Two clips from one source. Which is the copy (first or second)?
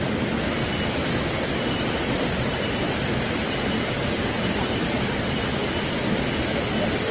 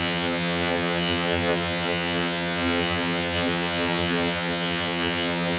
second